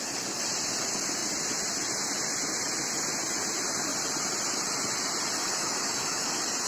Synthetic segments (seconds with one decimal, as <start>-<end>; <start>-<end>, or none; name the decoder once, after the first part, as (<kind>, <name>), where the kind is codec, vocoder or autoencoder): 5.4-6.3 (autoencoder, DAC-VAE)